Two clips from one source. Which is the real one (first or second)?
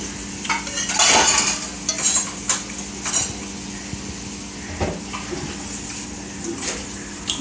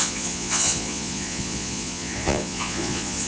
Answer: first